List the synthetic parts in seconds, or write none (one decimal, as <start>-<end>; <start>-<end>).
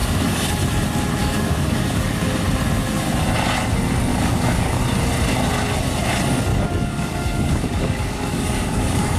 0.0-0.5; 1.2-2.3; 4.1-4.8; 6.5-9.2